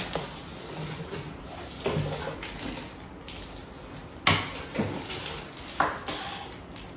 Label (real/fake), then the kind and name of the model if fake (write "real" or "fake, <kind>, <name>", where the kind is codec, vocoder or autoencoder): real